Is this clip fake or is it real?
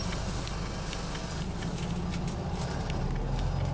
real